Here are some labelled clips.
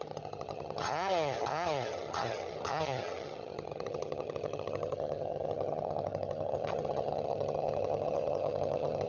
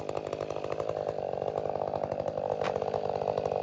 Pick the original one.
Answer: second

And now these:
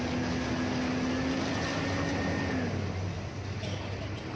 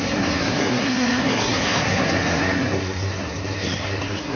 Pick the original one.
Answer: first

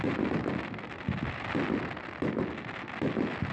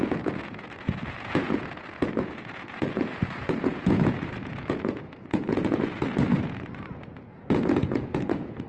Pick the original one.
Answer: first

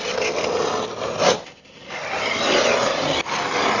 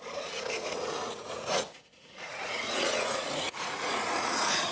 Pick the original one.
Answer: first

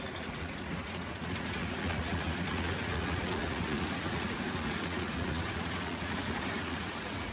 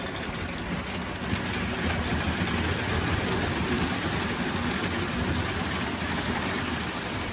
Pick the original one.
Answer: second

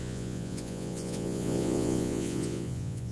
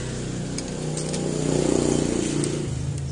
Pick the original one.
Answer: second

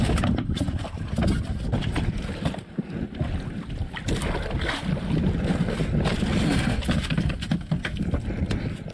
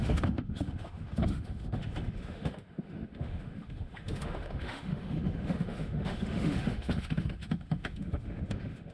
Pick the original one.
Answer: first